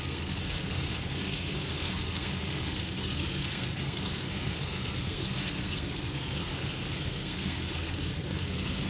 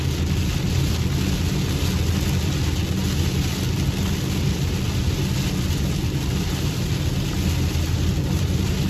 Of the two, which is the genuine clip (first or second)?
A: second